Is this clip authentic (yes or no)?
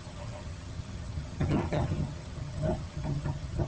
no